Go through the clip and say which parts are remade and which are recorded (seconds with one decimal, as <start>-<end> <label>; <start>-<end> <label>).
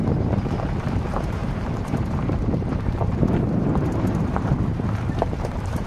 0.0-5.9 remade